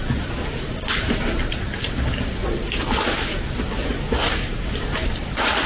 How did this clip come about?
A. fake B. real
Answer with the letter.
B